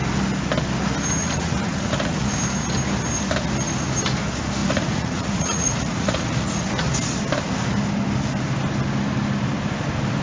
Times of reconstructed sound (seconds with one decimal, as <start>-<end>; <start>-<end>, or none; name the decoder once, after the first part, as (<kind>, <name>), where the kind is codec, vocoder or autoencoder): 1.2-2.4 (vocoder, Vocos); 4.6-6.7